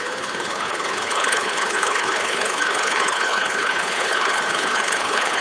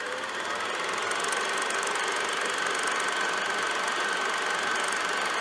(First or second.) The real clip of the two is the second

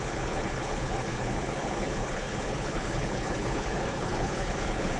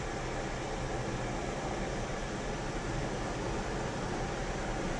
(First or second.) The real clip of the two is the second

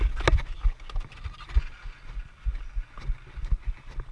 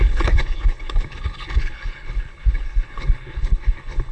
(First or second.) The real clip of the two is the first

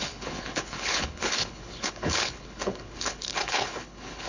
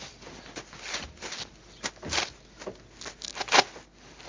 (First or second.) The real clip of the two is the second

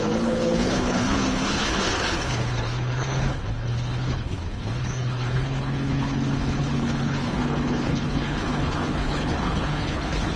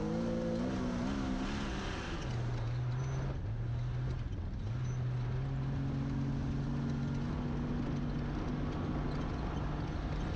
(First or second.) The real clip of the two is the second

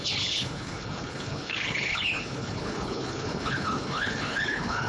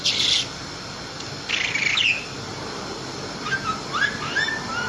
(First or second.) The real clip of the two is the second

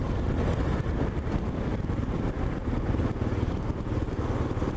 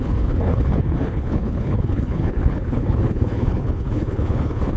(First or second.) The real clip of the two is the first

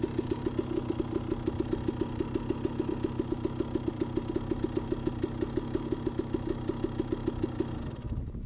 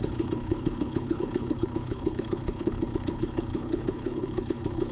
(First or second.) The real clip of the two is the first